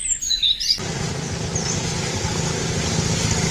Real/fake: real